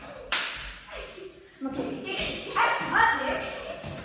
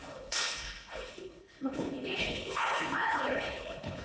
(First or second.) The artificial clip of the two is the second